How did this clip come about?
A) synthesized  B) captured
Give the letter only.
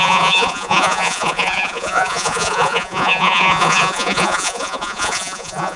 A